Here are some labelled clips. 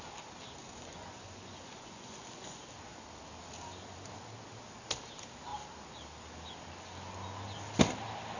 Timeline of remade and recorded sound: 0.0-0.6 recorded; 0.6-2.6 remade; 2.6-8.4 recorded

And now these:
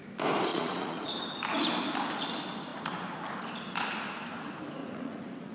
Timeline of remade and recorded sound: 0.0-0.5 recorded; 0.5-1.1 remade; 1.1-4.8 recorded; 4.8-5.5 remade